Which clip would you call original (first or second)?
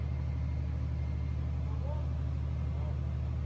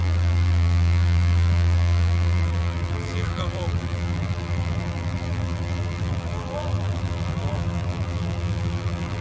first